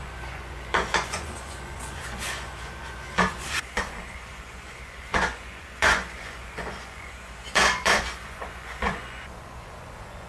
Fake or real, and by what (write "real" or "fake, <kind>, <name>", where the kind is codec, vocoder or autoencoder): fake, vocoder, Vocos